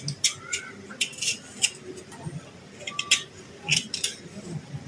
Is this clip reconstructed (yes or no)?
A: no